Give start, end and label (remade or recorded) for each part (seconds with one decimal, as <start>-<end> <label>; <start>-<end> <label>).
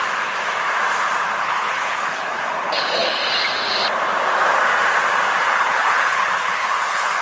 0.0-1.4 recorded; 1.4-3.2 remade; 3.2-5.4 recorded; 5.4-7.2 remade